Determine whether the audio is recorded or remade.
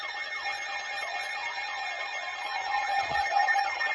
remade